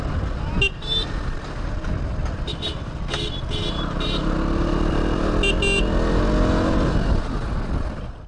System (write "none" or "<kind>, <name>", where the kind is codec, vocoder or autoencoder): none